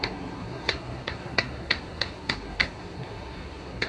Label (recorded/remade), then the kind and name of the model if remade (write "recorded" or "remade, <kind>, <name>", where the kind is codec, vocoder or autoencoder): remade, codec, SNAC